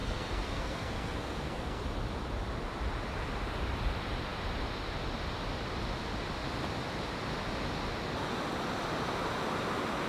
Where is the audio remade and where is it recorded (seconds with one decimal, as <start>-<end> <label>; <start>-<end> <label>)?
0.0-1.8 remade; 1.8-10.1 recorded